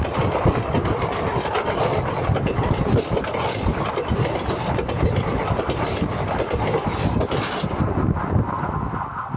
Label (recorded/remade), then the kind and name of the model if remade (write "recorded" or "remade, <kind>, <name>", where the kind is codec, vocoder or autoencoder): recorded